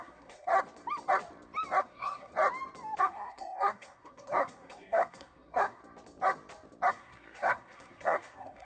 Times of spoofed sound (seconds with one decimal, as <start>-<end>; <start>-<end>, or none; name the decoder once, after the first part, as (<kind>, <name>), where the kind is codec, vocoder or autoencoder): 0.0-0.5 (codec, SNAC); 1.8-2.3; 3.0-5.8; 6.9-8.6